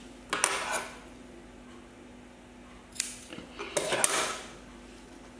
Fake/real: real